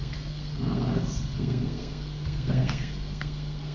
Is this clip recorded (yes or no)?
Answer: no